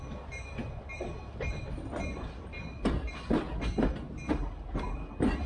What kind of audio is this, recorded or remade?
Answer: recorded